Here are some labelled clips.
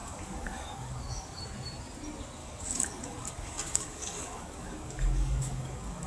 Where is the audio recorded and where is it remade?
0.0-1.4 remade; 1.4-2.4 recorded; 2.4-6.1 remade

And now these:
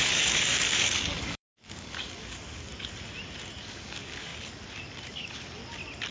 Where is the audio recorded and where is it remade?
0.0-2.7 remade; 2.7-3.6 recorded; 3.6-4.3 remade; 4.3-5.1 recorded; 5.1-5.6 remade; 5.6-6.1 recorded

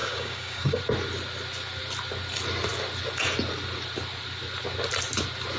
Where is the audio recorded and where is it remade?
0.0-0.8 remade; 0.8-5.6 recorded